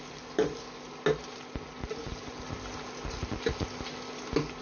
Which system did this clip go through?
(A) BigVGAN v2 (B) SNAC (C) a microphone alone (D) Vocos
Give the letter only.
C